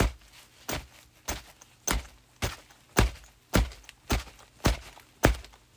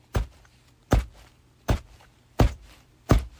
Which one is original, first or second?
first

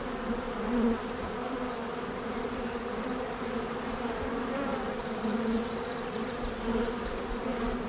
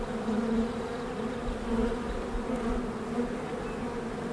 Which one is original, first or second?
second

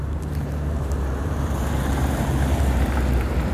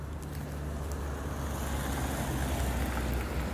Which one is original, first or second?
second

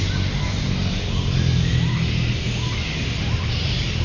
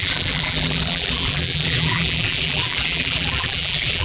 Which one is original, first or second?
first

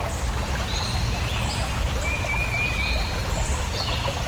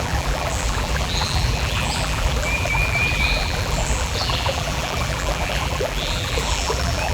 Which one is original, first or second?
first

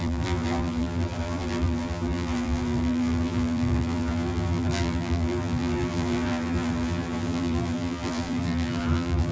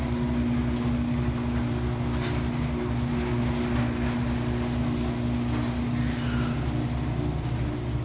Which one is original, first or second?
second